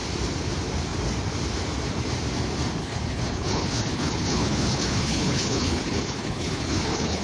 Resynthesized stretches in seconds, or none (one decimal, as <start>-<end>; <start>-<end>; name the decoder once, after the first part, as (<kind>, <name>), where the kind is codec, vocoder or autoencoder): 2.8-7.2 (codec, HILCodec)